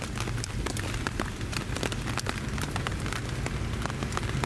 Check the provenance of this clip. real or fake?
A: real